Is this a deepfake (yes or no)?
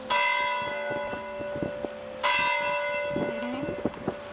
no